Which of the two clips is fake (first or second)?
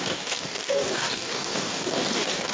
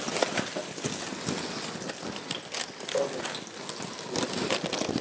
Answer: first